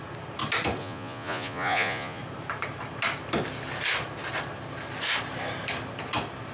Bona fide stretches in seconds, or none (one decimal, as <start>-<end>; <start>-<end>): 0.0-0.8; 2.2-6.5